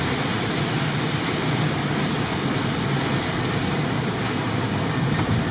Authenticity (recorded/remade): remade